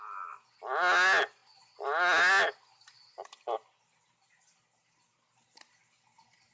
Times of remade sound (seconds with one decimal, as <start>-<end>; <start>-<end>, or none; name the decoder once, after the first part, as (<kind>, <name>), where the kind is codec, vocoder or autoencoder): none